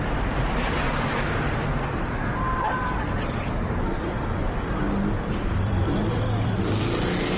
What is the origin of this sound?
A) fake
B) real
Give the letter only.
A